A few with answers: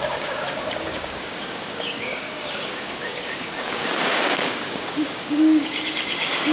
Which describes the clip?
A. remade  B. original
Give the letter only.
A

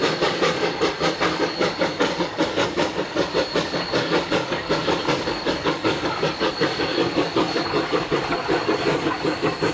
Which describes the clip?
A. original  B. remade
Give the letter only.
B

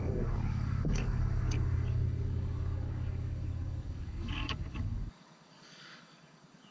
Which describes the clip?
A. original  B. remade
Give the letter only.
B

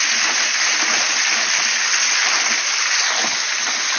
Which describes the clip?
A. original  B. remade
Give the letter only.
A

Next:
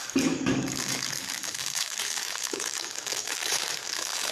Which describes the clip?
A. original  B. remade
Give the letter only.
B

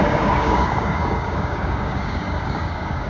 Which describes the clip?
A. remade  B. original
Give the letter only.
A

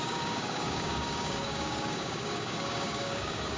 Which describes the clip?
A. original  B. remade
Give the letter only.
B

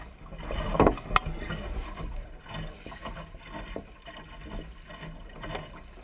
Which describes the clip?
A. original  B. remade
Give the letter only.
A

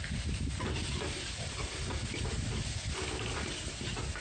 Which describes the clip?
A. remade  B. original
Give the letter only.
B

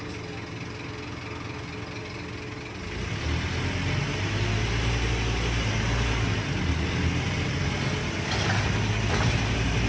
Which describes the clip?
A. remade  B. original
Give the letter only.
B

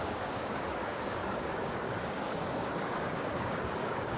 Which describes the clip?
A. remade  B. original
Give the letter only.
A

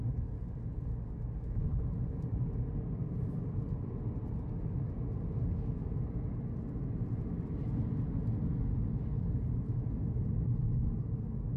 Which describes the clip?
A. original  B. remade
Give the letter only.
A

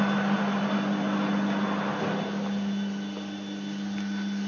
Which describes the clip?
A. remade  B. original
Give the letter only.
B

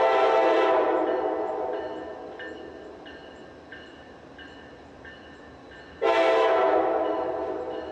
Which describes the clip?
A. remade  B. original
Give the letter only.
B